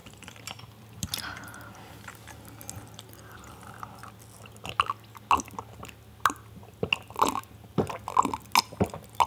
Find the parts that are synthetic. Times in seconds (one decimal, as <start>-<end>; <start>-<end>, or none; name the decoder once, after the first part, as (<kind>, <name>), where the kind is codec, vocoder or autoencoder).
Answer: 0.0-2.0 (vocoder, BigVGAN v2)